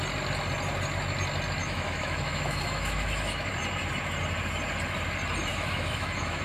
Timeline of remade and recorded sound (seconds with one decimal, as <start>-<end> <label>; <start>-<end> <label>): 0.0-1.6 recorded; 1.6-3.5 remade; 3.5-5.5 recorded; 5.5-6.4 remade